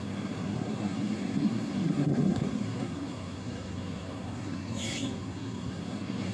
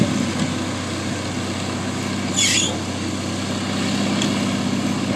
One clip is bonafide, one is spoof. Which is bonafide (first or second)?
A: second